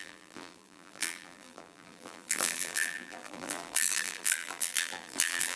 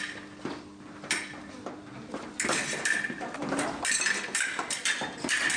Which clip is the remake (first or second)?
first